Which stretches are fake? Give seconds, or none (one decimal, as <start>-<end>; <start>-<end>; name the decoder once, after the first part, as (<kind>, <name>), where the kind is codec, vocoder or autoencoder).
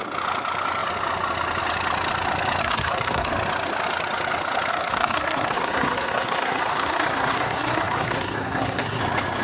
2.6-3.3 (codec, SNAC); 4.7-9.0